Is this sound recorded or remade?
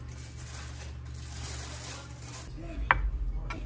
recorded